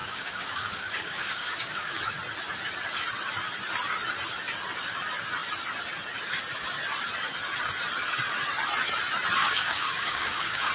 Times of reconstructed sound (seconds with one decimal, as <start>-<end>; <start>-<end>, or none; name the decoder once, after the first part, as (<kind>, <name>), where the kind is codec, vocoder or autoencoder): 0.0-2.0 (codec, DAC); 9.4-10.7